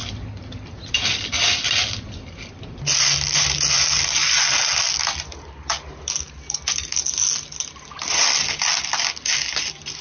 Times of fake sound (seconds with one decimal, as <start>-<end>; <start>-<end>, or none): none